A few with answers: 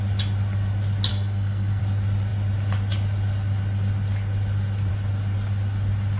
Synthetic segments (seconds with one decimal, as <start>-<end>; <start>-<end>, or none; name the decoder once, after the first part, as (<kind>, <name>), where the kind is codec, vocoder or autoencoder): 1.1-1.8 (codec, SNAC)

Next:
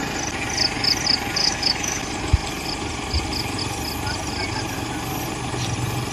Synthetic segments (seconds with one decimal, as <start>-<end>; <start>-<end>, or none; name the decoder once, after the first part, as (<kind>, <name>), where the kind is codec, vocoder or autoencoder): 1.4-2.0 (autoencoder, DAC-VAE)

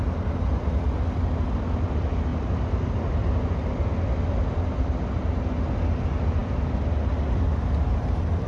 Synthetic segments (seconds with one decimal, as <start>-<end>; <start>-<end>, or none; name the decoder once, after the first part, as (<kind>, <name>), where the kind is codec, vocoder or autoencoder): none

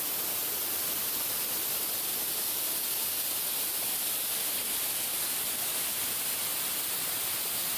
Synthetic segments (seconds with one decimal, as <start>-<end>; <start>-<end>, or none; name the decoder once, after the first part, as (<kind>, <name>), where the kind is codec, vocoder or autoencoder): none